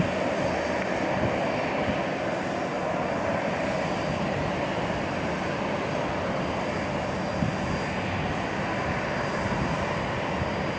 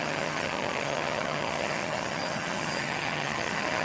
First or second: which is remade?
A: second